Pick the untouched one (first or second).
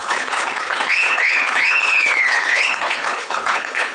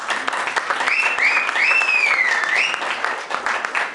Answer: second